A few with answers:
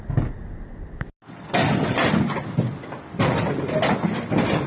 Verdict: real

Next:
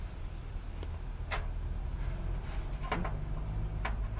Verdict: real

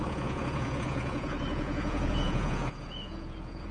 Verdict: fake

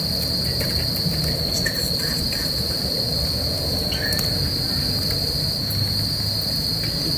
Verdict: real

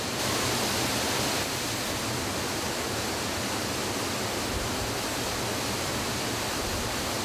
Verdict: real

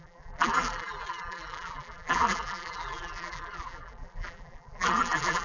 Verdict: fake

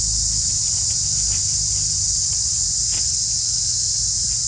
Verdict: real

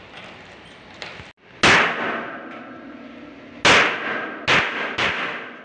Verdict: real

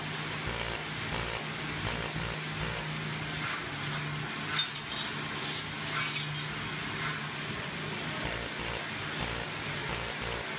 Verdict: real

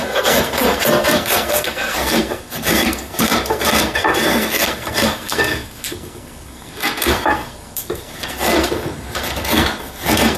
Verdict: fake